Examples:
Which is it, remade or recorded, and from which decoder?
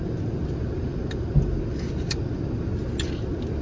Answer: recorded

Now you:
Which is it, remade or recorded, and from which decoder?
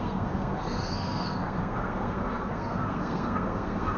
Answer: remade, codec, SNAC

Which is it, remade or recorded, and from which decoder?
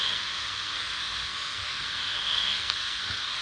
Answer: remade, codec, SNAC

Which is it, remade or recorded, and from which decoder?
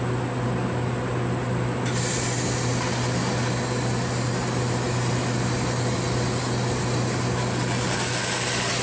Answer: recorded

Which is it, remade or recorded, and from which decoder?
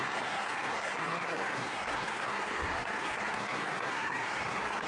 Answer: remade, codec, SNAC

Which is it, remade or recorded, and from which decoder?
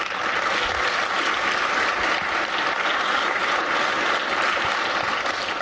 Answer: recorded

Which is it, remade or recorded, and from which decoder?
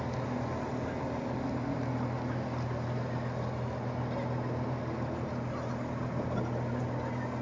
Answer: recorded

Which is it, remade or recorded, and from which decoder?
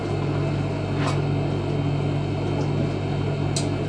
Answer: recorded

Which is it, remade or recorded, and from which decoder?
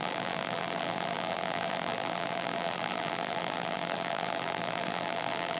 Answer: remade, vocoder, BigVGAN v2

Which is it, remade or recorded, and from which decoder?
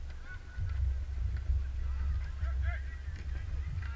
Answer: recorded